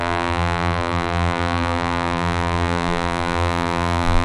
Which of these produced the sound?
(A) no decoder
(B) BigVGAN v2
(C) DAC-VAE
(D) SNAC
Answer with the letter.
B